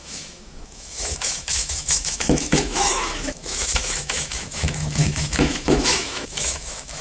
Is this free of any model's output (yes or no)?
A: no